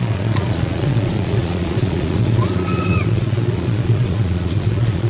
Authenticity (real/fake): fake